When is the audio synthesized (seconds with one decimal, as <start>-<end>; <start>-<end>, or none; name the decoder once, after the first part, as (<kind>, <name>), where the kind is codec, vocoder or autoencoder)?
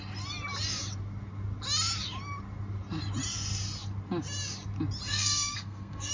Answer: 5.1-6.1 (codec, SNAC)